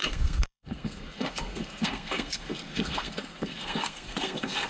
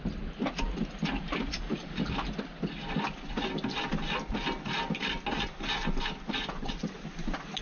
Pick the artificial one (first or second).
first